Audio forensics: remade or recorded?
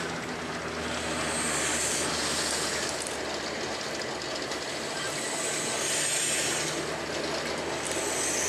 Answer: recorded